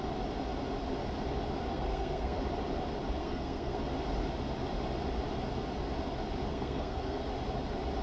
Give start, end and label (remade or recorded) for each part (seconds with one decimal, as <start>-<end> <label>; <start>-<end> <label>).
0.0-1.7 recorded; 1.7-2.4 remade; 2.4-3.2 recorded; 3.2-3.8 remade; 3.8-6.5 recorded; 6.5-7.3 remade; 7.3-8.0 recorded